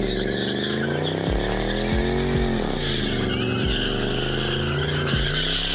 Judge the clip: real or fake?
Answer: real